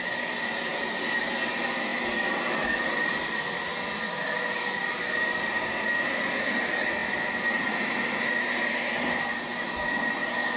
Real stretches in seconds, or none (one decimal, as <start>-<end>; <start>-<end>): 0.0-10.6